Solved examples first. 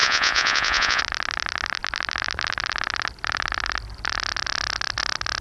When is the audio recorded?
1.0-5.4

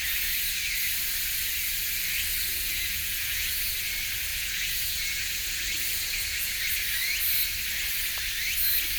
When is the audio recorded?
0.0-2.5; 3.7-4.3; 6.6-9.0

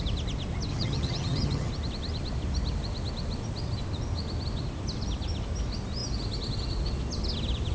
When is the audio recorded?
0.0-0.7; 1.7-7.7

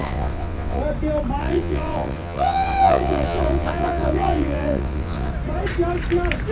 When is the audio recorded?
0.8-1.4; 5.3-6.5

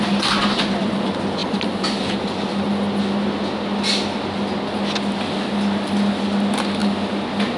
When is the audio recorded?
0.0-7.6